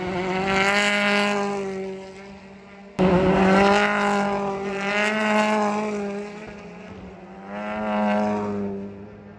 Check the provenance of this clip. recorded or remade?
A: recorded